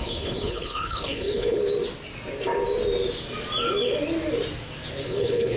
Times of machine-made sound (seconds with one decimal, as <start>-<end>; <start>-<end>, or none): 0.0-1.6; 5.0-5.6